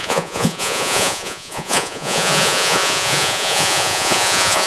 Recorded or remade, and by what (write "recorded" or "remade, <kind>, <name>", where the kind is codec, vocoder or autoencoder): remade, vocoder, Vocos